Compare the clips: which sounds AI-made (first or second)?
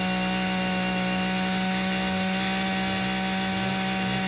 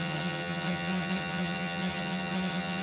second